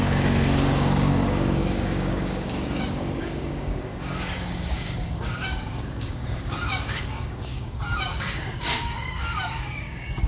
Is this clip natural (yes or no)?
no